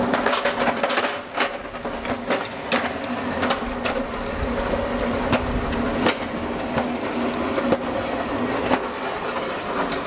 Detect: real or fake real